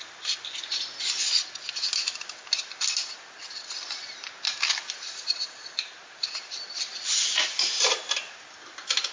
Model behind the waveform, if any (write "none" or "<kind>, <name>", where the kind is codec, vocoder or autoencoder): none